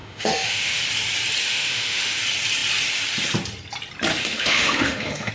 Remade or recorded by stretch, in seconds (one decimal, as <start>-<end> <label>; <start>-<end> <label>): 0.0-0.8 remade; 0.8-1.4 recorded; 1.4-2.2 remade; 2.2-4.1 recorded; 4.1-5.3 remade